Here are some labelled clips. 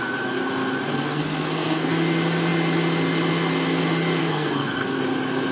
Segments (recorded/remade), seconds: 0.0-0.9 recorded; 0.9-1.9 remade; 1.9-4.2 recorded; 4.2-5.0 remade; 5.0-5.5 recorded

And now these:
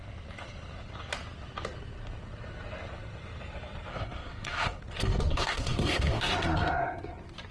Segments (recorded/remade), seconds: 0.0-3.9 recorded; 3.9-4.8 remade; 4.8-5.3 recorded; 5.3-6.3 remade; 6.3-7.5 recorded